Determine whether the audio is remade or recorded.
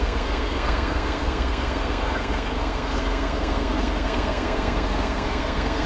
remade